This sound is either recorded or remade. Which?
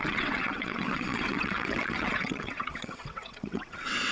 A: remade